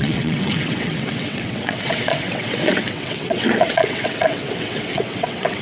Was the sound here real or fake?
fake